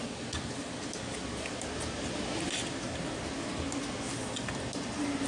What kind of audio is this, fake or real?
real